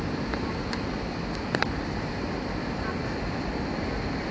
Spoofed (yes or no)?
no